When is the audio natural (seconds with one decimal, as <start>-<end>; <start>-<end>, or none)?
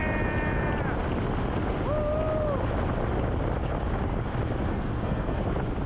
0.0-4.7; 5.4-5.9